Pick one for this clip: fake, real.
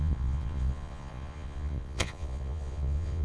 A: fake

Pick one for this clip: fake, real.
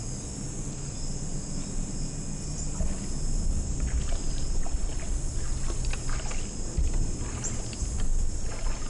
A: real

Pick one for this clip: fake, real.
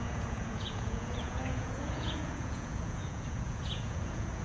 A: fake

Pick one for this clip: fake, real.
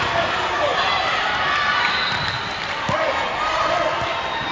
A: fake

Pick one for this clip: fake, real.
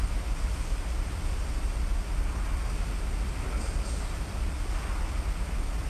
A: real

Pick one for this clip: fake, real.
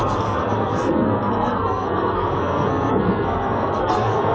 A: fake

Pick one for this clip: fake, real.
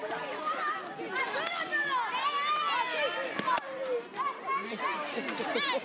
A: real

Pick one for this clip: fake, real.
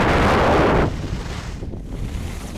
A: real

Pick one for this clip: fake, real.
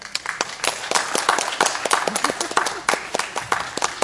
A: real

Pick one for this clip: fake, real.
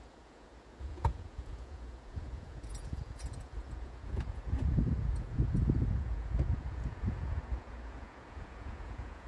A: fake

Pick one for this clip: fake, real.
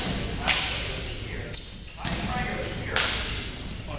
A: real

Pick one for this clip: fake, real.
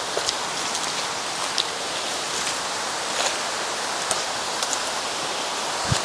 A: real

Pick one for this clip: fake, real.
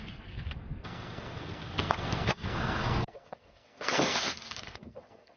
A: fake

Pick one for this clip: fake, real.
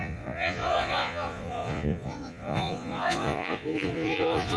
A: fake